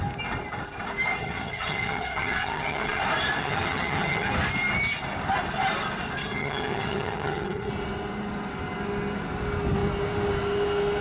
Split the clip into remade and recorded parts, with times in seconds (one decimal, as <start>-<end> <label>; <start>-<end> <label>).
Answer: 0.0-1.2 recorded; 1.2-3.0 remade; 3.0-3.4 recorded; 3.4-4.3 remade; 4.3-6.2 recorded; 6.2-7.7 remade; 7.7-11.0 recorded